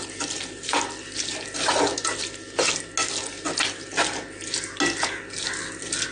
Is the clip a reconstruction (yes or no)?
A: no